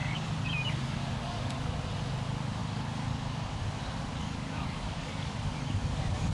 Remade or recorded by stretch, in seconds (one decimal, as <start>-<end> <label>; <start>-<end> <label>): 0.0-1.7 remade; 1.7-2.6 recorded; 2.6-3.6 remade; 3.6-4.1 recorded; 4.1-6.3 remade